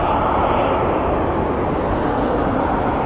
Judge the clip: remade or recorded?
recorded